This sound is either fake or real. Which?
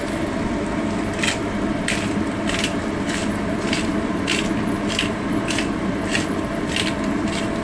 fake